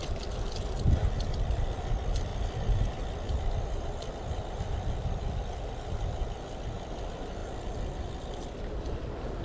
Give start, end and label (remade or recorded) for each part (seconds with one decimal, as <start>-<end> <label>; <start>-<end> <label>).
0.0-2.3 remade; 2.3-4.6 recorded; 4.6-9.4 remade

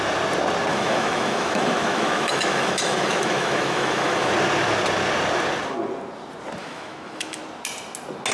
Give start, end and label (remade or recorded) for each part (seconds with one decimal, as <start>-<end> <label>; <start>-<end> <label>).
0.0-0.7 recorded; 0.7-4.3 remade; 4.3-6.6 recorded; 6.6-7.4 remade; 7.4-8.3 recorded

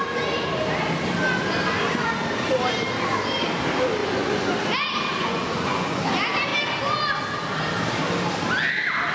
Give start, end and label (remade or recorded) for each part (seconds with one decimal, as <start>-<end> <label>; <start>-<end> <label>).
0.0-4.0 recorded; 4.0-4.5 remade; 4.5-5.2 recorded; 5.2-6.0 remade; 6.0-9.1 recorded

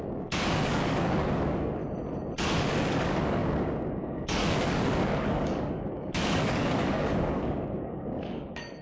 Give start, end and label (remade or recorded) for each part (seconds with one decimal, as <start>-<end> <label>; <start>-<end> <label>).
0.0-1.8 remade; 1.8-2.4 recorded; 2.4-8.8 remade

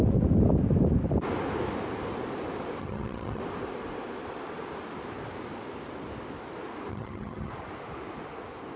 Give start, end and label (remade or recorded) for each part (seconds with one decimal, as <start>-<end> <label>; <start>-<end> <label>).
0.0-2.8 recorded; 2.8-3.4 remade; 3.4-6.9 recorded; 6.9-7.5 remade; 7.5-8.8 recorded

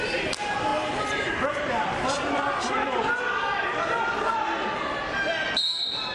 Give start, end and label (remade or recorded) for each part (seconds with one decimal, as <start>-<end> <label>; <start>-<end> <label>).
0.0-0.7 recorded; 0.7-4.4 remade; 4.4-6.1 recorded

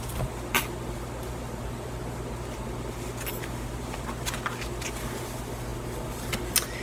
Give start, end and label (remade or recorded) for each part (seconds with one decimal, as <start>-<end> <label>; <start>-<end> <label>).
0.0-1.2 recorded; 1.2-2.0 remade; 2.0-6.8 recorded

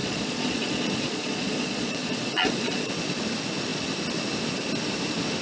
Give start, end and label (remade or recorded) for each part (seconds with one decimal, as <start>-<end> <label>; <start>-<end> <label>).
0.0-2.9 remade; 2.9-5.4 recorded